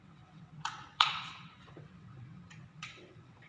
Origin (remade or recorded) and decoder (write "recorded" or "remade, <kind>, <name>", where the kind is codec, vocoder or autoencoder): remade, vocoder, WaveNeXt